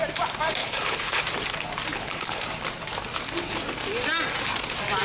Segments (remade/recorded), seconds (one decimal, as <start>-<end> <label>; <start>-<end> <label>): 0.0-0.6 recorded; 0.6-1.2 remade; 1.2-1.9 recorded; 1.9-2.4 remade; 2.4-5.0 recorded